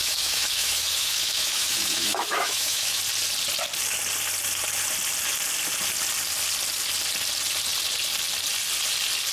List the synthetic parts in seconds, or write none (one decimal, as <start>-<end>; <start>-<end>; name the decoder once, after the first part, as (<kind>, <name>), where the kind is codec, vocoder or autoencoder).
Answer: 0.0-3.0 (autoencoder, DAC-VAE)